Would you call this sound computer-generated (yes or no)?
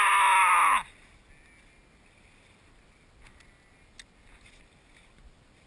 no